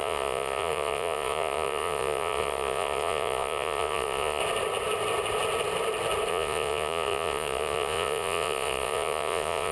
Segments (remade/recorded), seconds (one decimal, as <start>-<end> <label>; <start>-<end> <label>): 0.0-4.4 remade; 4.4-6.3 recorded; 6.3-9.7 remade